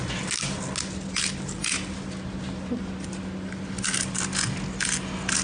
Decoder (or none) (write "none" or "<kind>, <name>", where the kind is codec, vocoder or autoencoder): none